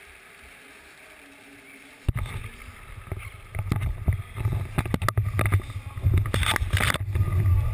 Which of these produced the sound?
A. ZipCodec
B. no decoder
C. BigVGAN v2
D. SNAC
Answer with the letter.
B